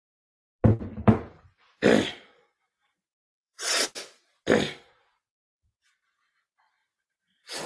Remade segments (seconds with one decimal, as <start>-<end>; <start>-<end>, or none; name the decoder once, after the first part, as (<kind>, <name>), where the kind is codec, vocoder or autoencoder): 2.8-3.8 (vocoder, BigVGAN v2); 6.8-7.7